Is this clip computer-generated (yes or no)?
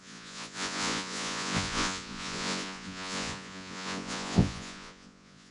yes